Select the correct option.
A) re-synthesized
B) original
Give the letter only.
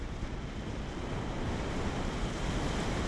A